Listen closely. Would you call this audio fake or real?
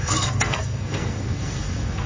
fake